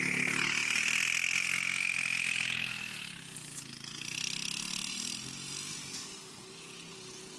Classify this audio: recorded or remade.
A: recorded